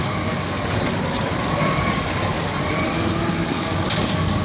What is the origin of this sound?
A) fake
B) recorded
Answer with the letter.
A